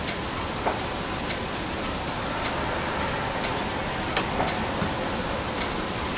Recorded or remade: recorded